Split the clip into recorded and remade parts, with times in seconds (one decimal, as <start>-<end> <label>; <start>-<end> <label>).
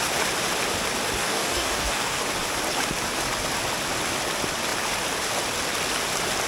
0.0-1.2 recorded; 1.2-2.2 remade; 2.2-6.5 recorded